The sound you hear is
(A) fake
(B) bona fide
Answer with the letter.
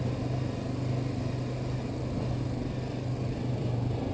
B